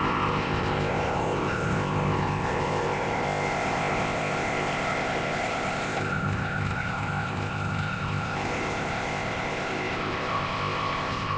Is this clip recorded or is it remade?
remade